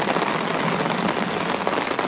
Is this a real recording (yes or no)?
yes